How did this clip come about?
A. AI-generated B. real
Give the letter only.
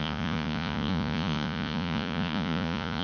A